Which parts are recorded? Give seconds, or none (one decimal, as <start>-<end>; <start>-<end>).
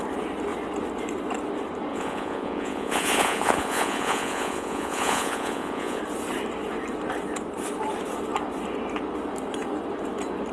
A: 0.0-1.9; 6.0-10.5